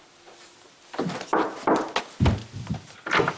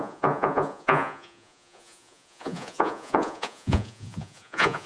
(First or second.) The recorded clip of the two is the first